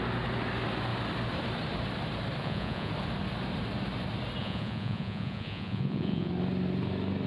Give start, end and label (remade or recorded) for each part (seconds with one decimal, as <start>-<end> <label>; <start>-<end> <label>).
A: 0.0-2.4 recorded; 2.4-2.9 remade; 2.9-4.4 recorded; 4.4-6.3 remade; 6.3-7.3 recorded